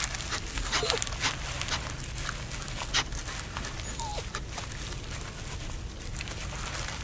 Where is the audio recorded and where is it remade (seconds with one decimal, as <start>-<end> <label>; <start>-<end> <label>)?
0.0-7.0 recorded